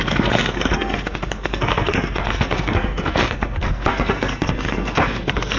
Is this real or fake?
fake